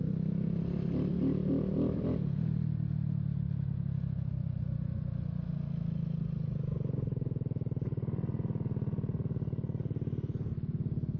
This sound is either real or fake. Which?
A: real